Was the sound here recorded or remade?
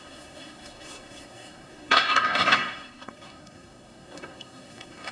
remade